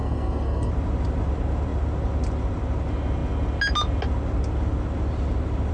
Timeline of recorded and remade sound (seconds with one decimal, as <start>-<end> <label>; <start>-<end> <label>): 0.0-0.7 remade; 0.7-5.7 recorded